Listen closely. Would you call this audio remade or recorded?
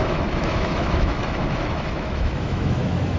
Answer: remade